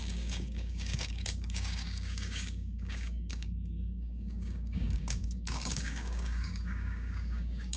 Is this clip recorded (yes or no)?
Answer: no